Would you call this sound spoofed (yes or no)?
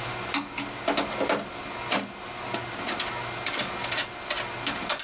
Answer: no